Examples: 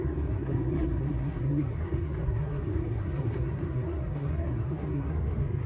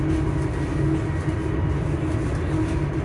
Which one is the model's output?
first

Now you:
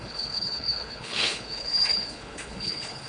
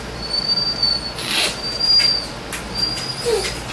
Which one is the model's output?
first